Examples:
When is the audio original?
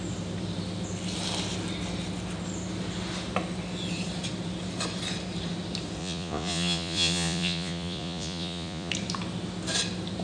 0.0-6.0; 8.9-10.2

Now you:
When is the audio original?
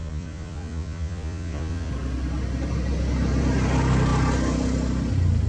1.9-5.5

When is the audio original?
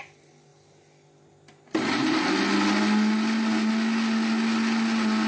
0.0-5.3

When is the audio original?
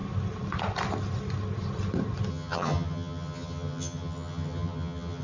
0.0-2.3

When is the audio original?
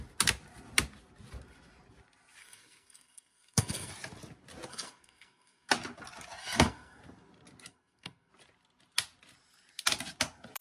0.0-2.4; 3.9-4.7; 5.7-6.4; 7.0-7.7; 8.3-10.6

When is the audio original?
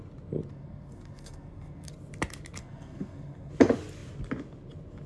0.0-0.5; 1.9-2.6; 3.5-5.1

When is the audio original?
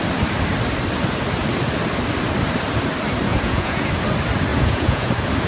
0.0-3.3; 3.9-4.5; 5.1-5.5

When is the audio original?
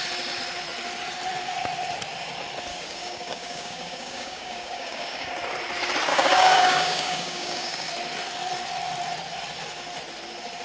0.0-2.7; 5.3-6.1; 7.9-10.6